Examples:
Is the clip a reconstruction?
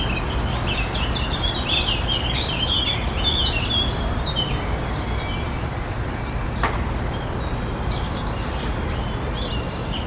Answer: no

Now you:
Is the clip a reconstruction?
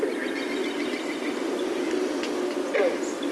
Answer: no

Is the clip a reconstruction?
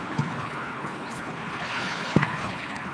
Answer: yes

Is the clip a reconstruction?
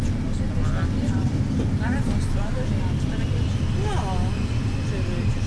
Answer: no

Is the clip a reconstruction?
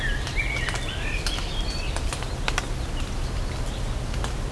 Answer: no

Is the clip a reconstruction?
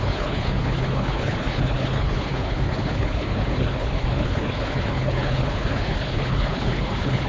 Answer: yes